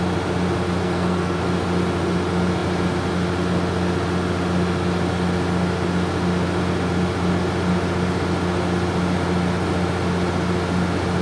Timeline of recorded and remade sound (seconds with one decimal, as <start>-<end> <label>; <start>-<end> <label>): 0.0-0.8 recorded; 0.8-1.4 remade; 1.4-11.2 recorded